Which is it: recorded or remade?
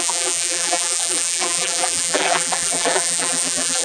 remade